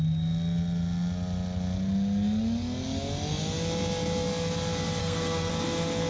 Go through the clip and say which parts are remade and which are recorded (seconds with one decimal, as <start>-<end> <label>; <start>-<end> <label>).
0.0-5.0 recorded; 5.0-5.5 remade; 5.5-6.1 recorded